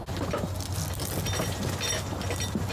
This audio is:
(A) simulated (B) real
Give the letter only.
B